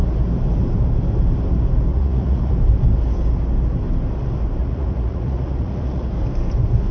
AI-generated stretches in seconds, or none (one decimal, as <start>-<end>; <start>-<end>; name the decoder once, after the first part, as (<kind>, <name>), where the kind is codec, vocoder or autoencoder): 1.9-2.5 (vocoder, Vocos); 4.6-6.1